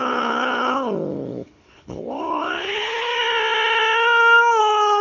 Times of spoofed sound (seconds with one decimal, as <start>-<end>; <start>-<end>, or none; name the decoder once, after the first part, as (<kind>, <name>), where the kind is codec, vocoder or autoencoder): 0.0-3.1 (codec, HILCodec); 4.6-5.0